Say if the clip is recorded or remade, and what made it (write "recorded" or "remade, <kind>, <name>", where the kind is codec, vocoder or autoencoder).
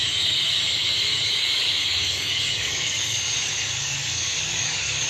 remade, codec, DAC